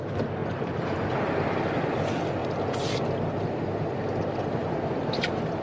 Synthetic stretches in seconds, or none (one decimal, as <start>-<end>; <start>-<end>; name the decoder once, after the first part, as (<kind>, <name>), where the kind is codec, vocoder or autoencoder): 0.4-2.0 (vocoder, BigVGAN v2)